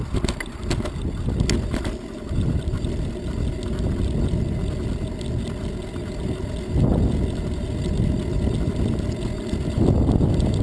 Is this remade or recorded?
recorded